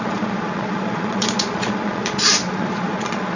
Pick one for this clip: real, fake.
fake